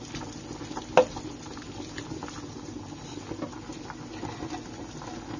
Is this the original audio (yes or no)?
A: yes